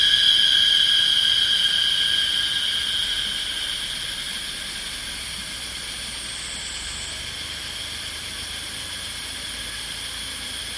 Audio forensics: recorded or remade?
recorded